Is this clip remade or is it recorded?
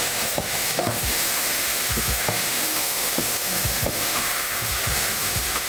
remade